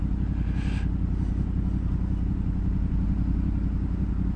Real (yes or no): yes